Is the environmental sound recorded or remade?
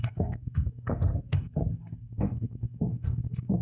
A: remade